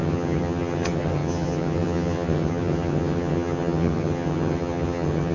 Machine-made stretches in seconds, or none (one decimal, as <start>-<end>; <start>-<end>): 0.0-5.3